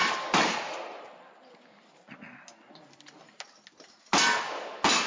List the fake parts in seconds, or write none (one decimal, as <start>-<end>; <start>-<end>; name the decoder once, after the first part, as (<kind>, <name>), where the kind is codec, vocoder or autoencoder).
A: none